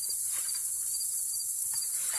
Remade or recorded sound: remade